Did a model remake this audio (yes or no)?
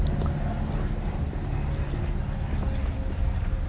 no